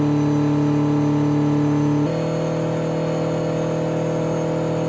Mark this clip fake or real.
real